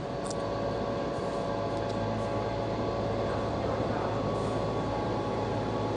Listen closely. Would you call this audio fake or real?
real